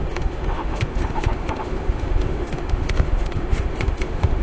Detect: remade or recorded remade